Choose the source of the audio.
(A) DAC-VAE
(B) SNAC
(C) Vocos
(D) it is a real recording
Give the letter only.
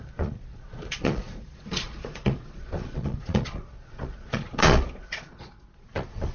C